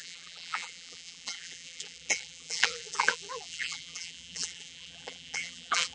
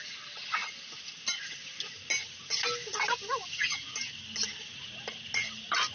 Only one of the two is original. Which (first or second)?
second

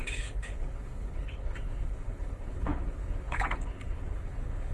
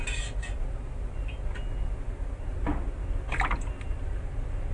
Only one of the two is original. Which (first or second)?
second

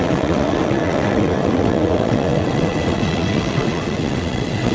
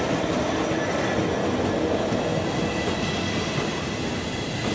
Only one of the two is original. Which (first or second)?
second